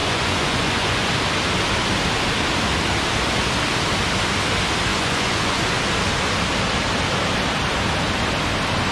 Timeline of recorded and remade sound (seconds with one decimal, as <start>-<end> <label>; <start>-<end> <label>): 0.0-1.1 remade; 1.1-4.9 recorded; 4.9-5.6 remade; 5.6-8.9 recorded